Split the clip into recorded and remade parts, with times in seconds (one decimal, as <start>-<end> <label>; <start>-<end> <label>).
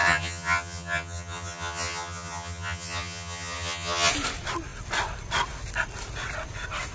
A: 0.0-4.1 remade; 4.1-6.9 recorded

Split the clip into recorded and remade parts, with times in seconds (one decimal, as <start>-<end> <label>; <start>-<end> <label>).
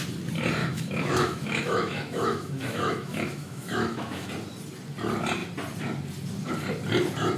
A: 0.0-0.6 recorded; 0.6-4.3 remade; 4.3-7.4 recorded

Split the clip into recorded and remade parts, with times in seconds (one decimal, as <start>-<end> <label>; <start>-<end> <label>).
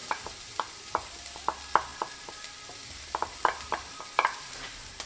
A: 0.0-1.4 remade; 1.4-1.9 recorded; 1.9-5.1 remade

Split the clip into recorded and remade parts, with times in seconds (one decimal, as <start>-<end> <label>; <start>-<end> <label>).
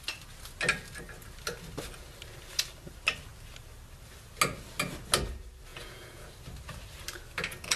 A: 0.0-5.7 recorded; 5.7-6.3 remade; 6.3-7.8 recorded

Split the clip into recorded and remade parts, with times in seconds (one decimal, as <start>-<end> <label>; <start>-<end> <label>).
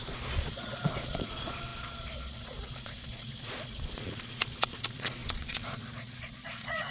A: 0.0-6.9 remade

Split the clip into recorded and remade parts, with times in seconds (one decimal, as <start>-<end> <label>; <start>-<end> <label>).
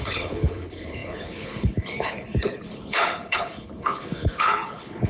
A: 0.0-5.1 remade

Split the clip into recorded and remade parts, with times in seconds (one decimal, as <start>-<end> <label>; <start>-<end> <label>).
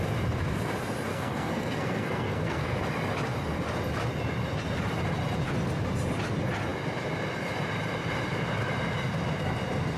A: 0.0-1.1 recorded; 1.1-2.8 remade; 2.8-10.0 recorded